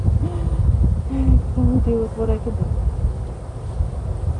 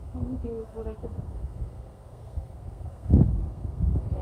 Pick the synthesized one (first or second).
second